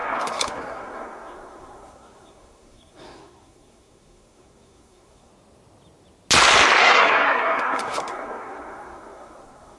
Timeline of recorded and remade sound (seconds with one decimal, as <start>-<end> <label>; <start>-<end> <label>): 0.0-5.3 remade; 5.3-6.8 recorded; 6.8-9.8 remade